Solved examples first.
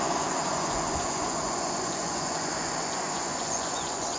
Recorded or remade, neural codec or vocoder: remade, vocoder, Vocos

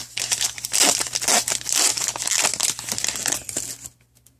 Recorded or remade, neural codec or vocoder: recorded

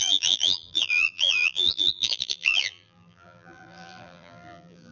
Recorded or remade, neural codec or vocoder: remade, vocoder, BigVGAN v2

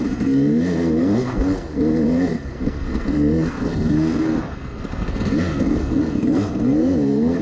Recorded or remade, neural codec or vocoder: remade, codec, SNAC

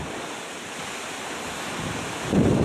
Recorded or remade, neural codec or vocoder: remade, vocoder, BigVGAN v2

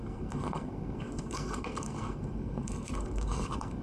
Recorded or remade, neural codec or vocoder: remade, codec, SNAC